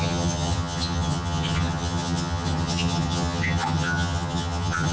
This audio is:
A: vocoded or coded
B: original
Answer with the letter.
A